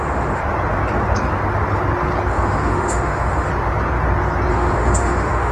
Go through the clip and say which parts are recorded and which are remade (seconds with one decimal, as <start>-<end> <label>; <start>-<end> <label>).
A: 0.0-0.4 remade; 0.4-2.3 recorded; 2.3-3.5 remade; 3.5-4.5 recorded; 4.5-5.5 remade